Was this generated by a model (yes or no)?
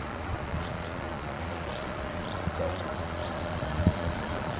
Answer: yes